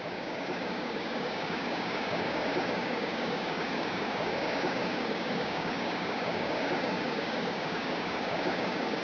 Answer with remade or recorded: remade